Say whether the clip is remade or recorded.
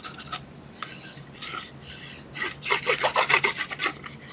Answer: recorded